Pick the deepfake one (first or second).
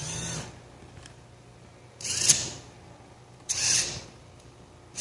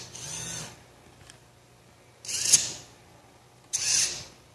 first